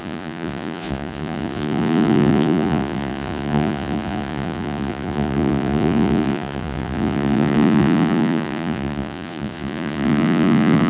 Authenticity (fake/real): fake